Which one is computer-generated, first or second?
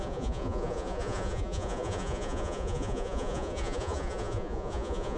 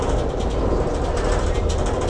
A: first